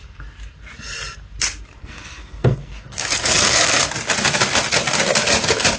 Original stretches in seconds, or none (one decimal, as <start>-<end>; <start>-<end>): 0.0-1.8; 3.8-5.8